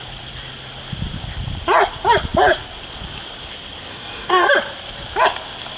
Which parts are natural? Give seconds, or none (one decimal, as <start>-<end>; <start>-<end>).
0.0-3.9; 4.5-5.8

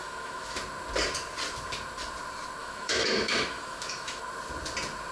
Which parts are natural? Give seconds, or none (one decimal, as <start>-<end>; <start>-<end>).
0.6-2.6; 4.2-5.1

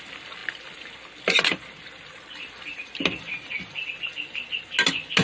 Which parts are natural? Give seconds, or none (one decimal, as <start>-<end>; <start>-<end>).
0.0-5.2

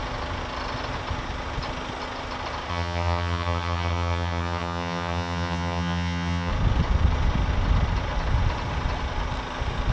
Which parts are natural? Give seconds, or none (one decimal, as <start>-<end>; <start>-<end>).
0.0-2.7; 6.5-9.9

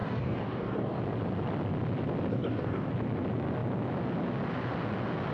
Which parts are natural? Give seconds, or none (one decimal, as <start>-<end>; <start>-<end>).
1.0-2.3; 2.9-5.3

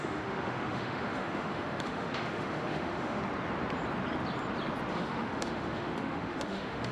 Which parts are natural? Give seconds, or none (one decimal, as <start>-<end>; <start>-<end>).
3.2-4.9

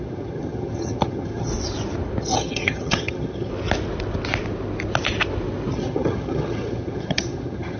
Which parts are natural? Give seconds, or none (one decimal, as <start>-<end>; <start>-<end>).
1.5-2.2; 3.5-5.7

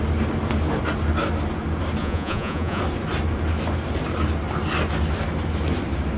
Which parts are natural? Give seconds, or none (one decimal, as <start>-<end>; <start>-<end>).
0.0-2.0; 2.8-6.2